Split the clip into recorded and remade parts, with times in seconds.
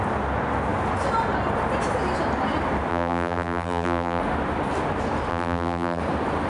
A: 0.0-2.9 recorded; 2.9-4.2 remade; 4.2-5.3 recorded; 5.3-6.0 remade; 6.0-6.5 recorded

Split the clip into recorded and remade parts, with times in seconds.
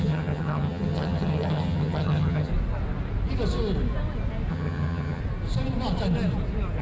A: 0.0-2.5 remade; 2.5-4.5 recorded; 4.5-5.2 remade; 5.2-6.8 recorded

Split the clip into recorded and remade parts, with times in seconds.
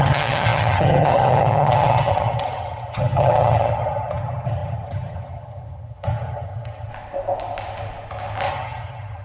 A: 0.0-6.9 remade; 6.9-8.5 recorded; 8.5-9.2 remade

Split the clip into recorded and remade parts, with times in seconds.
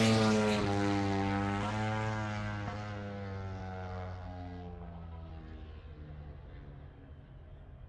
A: 0.0-3.6 recorded; 3.6-5.3 remade; 5.3-7.9 recorded